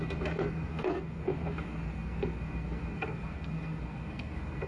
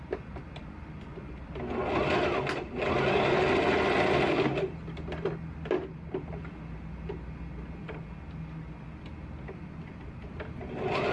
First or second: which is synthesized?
first